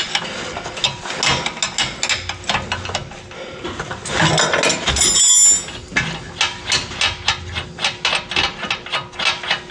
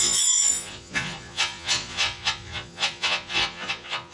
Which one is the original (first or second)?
first